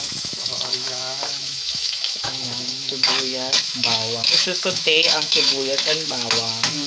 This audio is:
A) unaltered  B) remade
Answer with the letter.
B